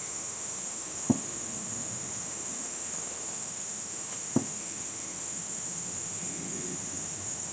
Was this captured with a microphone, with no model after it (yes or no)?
no